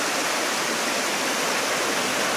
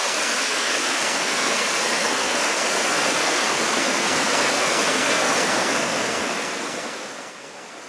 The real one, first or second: first